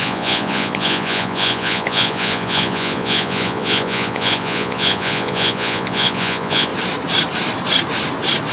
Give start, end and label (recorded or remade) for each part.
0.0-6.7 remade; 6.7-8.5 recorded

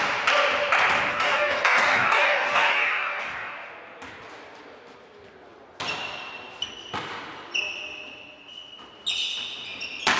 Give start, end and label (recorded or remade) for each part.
0.0-1.1 recorded; 1.1-3.7 remade; 3.7-10.2 recorded

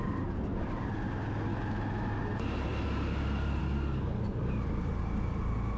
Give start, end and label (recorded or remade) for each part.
0.0-1.5 recorded; 1.5-2.1 remade; 2.1-5.8 recorded

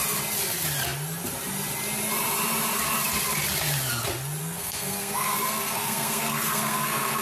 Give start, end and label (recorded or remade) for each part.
0.0-4.4 recorded; 4.4-7.2 remade

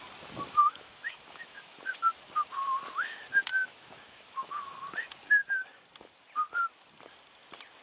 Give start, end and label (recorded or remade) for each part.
0.0-0.6 recorded; 0.6-1.8 remade; 1.8-3.5 recorded; 3.5-4.8 remade; 4.8-7.8 recorded

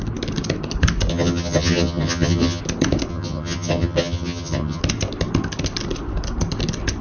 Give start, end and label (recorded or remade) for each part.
0.0-1.1 recorded; 1.1-2.6 remade; 2.6-3.1 recorded; 3.1-4.8 remade; 4.8-7.0 recorded

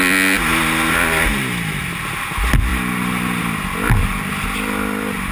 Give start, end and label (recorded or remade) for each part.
0.0-5.3 recorded

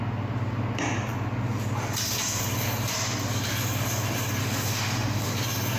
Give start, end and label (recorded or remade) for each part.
0.0-4.4 recorded; 4.4-5.3 remade; 5.3-5.8 recorded